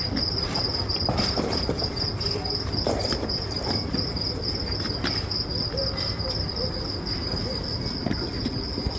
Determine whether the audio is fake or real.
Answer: real